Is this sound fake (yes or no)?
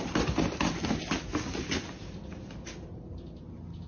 no